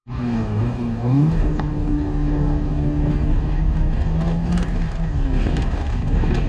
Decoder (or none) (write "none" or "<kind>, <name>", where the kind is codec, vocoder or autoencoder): codec, DAC